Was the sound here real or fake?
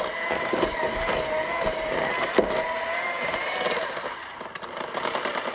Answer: fake